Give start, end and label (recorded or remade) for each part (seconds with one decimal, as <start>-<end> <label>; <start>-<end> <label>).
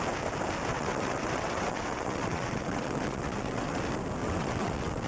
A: 0.0-0.7 recorded; 0.7-3.8 remade; 3.8-4.2 recorded; 4.2-5.1 remade